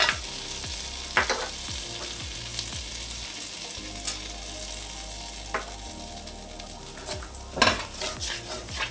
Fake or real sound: real